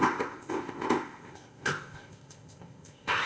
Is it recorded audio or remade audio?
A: remade